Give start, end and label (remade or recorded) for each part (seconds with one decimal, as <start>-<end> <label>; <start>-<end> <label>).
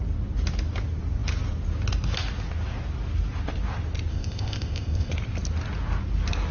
0.0-4.1 recorded; 4.1-5.1 remade; 5.1-6.5 recorded